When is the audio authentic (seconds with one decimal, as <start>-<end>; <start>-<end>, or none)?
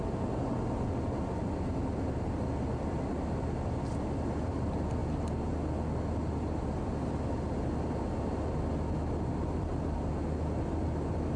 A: 0.0-11.4